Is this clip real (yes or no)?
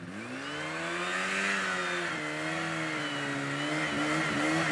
yes